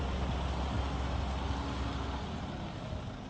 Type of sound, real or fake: real